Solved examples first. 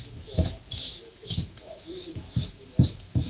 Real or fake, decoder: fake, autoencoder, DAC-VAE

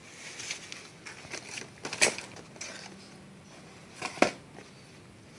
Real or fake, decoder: real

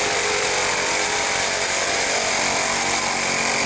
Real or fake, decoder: real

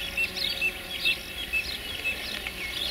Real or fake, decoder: real